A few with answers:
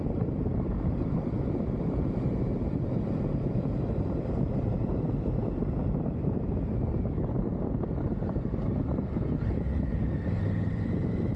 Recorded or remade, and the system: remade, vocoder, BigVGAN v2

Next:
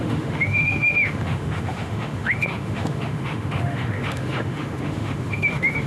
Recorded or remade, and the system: remade, autoencoder, DAC-VAE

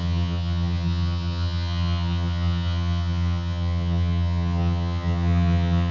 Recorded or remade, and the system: remade, vocoder, HiFi-GAN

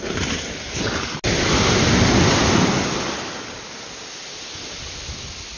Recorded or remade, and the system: recorded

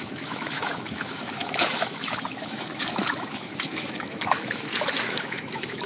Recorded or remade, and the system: remade, autoencoder, DAC-VAE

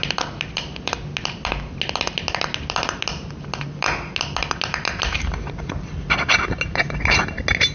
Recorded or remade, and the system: recorded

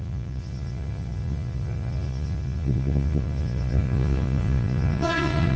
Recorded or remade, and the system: remade, vocoder, Vocos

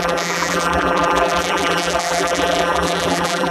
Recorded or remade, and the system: remade, vocoder, BigVGAN v2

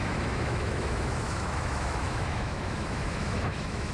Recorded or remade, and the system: remade, autoencoder, DAC-VAE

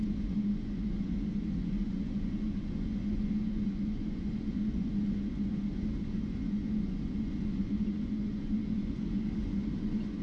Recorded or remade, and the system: remade, vocoder, Vocos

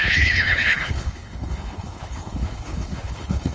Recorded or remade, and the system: remade, codec, HILCodec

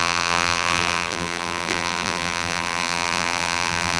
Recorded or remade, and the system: remade, vocoder, BigVGAN v2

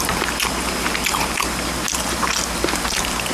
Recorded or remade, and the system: recorded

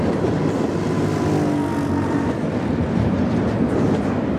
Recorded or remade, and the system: recorded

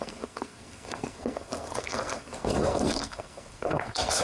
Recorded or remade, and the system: remade, codec, SNAC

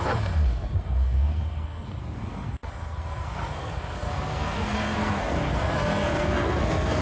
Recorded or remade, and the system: remade, codec, SNAC